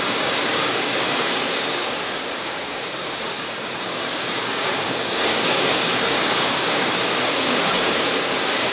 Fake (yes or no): yes